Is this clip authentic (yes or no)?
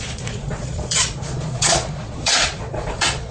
no